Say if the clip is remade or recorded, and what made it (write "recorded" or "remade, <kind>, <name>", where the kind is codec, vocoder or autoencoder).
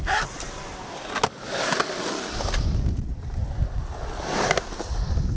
recorded